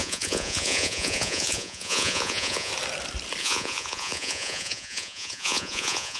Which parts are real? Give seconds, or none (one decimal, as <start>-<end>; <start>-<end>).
2.7-3.4